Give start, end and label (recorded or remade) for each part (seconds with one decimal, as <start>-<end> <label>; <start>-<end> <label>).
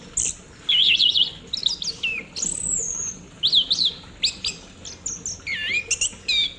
0.0-0.8 recorded; 0.8-1.4 remade; 1.4-2.6 recorded; 2.6-3.2 remade; 3.2-6.6 recorded